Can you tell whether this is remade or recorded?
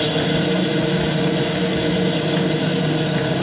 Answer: recorded